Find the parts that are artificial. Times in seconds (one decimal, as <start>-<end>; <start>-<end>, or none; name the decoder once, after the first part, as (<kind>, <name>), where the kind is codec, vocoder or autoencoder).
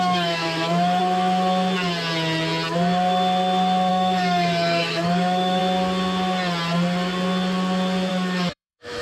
0.0-1.0 (autoencoder, DAC-VAE); 3.9-5.6; 8.1-9.0